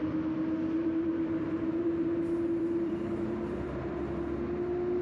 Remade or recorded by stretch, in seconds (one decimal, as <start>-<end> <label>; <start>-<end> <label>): 0.0-0.8 recorded; 0.8-3.8 remade; 3.8-5.0 recorded